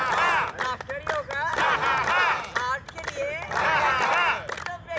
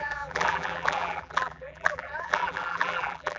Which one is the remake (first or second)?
second